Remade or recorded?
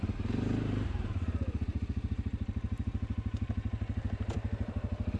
remade